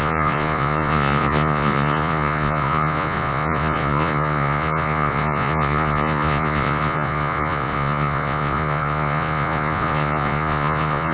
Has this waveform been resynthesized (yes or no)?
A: yes